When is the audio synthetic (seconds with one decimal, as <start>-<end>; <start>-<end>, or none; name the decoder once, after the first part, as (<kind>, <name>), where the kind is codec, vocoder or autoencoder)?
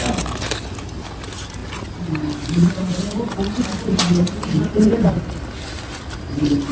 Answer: none